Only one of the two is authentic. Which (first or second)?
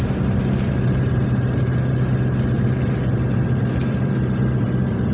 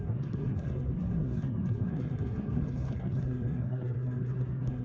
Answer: first